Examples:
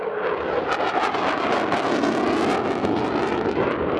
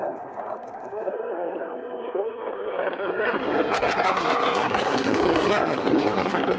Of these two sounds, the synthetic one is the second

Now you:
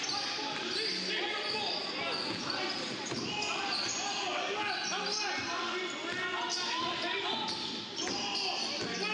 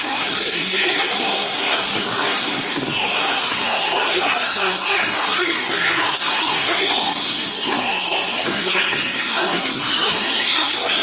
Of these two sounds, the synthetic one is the second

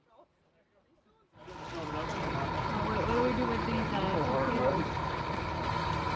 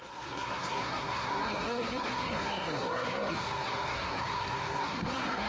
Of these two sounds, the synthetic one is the second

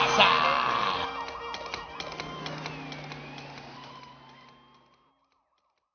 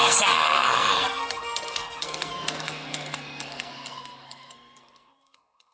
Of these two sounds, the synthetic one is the second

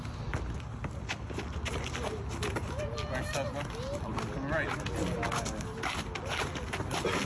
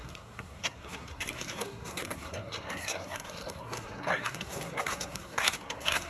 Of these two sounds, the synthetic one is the second